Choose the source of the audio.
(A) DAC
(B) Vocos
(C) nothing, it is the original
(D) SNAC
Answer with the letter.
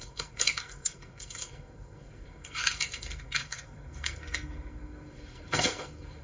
D